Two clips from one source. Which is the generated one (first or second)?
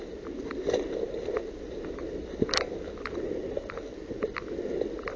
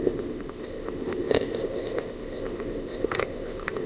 second